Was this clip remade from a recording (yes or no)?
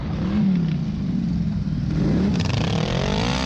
no